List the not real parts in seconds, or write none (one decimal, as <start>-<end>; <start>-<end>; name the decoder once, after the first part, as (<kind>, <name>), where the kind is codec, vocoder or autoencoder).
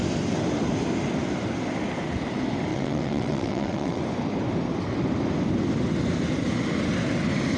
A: 2.7-4.0 (vocoder, WaveNeXt)